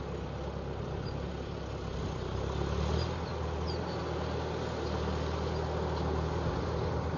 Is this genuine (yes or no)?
yes